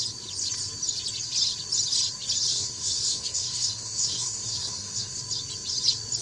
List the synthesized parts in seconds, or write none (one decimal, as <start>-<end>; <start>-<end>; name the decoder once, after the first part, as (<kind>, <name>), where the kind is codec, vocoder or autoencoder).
2.5-5.2 (codec, SNAC)